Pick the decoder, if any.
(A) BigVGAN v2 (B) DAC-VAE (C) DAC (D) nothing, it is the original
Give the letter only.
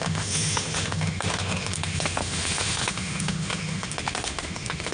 B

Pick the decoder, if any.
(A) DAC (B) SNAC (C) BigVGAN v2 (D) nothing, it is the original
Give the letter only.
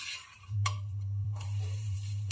C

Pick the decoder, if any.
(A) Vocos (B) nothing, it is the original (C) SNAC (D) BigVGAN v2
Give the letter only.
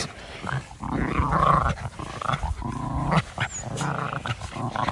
B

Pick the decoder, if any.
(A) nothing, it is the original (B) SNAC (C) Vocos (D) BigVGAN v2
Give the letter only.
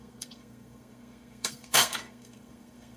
B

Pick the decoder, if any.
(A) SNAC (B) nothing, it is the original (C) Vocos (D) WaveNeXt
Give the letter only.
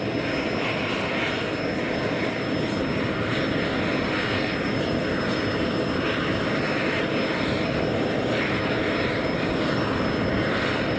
B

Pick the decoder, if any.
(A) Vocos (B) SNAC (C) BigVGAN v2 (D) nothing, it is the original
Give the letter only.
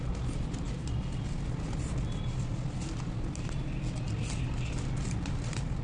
D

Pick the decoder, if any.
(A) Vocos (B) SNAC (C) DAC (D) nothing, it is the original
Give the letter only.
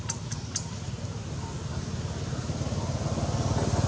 D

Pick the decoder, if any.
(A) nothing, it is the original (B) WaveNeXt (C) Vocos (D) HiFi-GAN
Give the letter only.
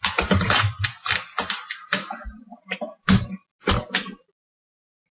A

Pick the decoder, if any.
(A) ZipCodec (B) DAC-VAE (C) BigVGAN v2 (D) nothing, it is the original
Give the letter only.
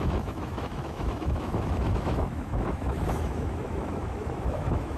B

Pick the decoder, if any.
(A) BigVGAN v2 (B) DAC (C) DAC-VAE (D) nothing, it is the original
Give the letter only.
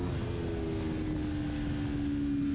D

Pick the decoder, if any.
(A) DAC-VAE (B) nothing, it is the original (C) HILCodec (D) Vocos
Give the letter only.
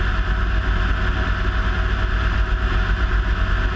B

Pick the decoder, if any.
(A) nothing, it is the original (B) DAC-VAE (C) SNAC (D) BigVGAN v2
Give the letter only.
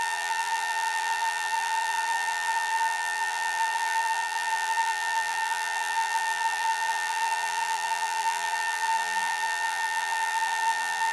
D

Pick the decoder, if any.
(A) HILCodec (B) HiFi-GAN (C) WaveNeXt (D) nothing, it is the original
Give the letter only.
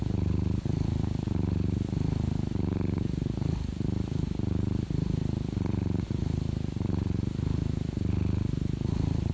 D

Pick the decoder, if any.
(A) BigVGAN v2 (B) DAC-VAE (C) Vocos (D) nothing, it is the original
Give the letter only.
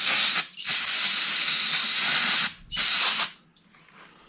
D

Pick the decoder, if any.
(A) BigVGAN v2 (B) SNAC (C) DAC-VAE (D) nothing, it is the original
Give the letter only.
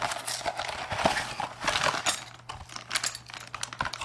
D